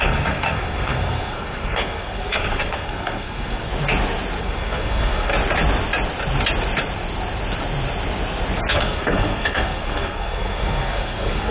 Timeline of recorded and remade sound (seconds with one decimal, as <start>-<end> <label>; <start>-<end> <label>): 0.0-3.7 remade; 3.7-4.4 recorded; 4.4-5.3 remade; 5.3-8.7 recorded; 8.7-11.5 remade